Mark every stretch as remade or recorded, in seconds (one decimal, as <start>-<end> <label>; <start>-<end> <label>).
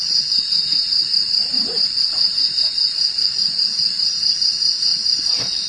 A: 0.0-1.0 recorded; 1.0-4.4 remade; 4.4-4.9 recorded; 4.9-5.7 remade